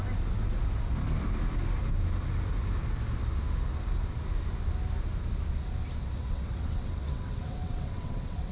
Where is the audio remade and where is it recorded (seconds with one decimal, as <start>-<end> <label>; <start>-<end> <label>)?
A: 0.0-6.0 recorded; 6.0-8.5 remade